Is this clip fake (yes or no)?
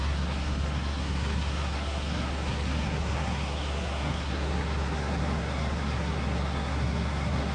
yes